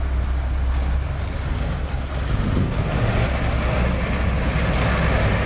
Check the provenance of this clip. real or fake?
real